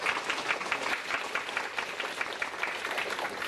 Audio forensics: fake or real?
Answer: real